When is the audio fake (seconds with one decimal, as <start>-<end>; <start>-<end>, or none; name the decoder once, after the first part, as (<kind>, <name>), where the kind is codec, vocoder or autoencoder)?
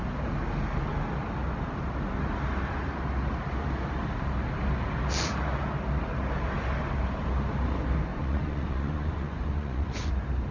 8.1-10.1 (vocoder, Vocos)